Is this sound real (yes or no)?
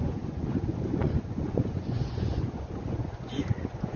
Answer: no